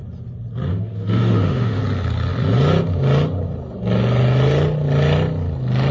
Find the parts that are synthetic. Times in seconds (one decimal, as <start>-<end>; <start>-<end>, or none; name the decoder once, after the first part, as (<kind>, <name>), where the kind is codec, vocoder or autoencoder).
0.7-1.8 (autoencoder, DAC-VAE)